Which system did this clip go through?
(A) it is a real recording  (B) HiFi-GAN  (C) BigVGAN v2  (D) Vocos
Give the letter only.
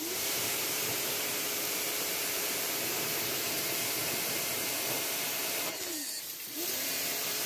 C